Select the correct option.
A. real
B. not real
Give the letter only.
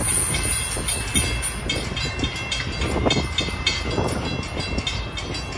A